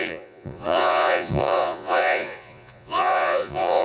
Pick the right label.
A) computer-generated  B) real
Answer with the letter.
A